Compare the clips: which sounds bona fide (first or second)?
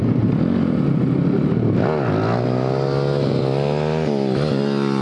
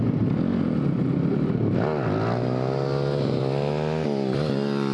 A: first